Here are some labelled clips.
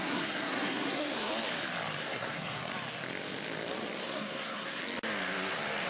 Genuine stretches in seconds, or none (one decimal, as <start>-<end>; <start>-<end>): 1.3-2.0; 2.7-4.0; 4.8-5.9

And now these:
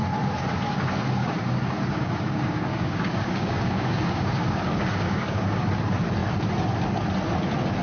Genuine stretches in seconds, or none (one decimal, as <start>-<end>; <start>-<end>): 0.0-1.2; 5.6-7.8

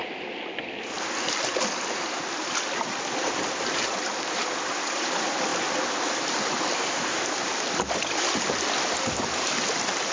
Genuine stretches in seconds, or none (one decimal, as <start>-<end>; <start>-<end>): 0.0-10.1

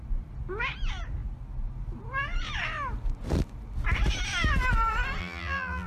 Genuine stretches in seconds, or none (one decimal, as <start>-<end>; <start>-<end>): 0.0-5.2

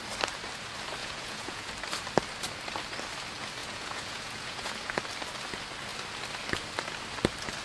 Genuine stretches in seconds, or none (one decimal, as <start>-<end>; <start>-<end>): 0.0-1.0; 1.7-3.6; 5.0-7.6